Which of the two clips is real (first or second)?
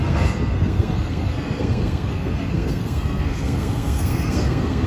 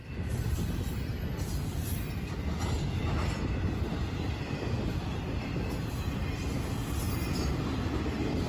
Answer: second